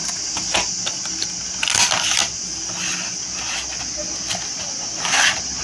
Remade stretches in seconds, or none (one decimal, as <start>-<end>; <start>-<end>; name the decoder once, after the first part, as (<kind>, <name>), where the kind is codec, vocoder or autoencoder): none